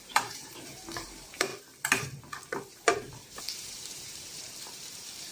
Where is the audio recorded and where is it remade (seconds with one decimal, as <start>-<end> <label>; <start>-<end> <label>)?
0.0-1.5 remade; 1.5-2.7 recorded; 2.7-5.3 remade